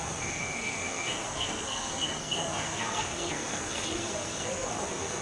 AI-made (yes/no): yes